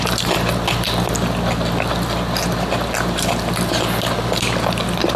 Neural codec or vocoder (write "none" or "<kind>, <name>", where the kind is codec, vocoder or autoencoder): vocoder, BigVGAN v2